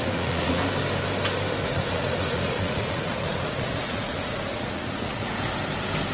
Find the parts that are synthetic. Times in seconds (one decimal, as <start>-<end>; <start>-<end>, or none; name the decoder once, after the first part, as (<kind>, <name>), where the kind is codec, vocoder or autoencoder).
0.0-0.6 (vocoder, Vocos); 1.6-5.3